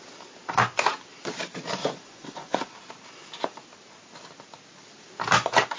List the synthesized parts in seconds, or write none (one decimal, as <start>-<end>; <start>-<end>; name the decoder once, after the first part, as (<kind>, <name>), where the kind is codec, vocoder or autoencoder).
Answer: 1.8-2.7 (vocoder, Vocos)